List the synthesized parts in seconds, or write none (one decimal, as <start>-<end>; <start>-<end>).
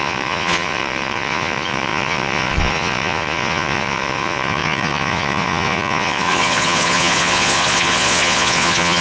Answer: 0.0-9.0